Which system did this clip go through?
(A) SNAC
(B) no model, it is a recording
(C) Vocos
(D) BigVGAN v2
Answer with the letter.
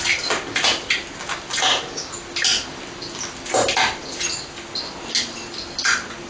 B